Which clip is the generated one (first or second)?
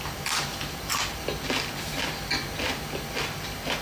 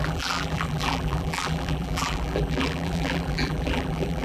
second